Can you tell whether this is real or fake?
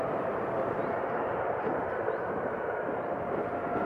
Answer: real